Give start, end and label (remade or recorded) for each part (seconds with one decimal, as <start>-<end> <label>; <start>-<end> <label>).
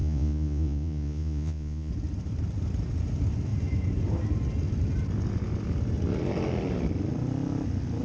0.0-1.9 remade; 1.9-8.0 recorded